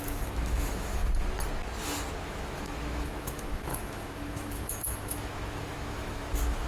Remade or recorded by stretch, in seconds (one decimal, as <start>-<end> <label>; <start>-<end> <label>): 0.0-1.0 remade; 1.0-2.2 recorded; 2.2-6.7 remade